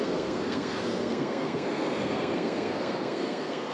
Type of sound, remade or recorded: remade